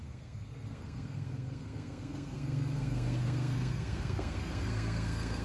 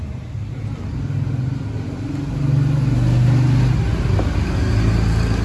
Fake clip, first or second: first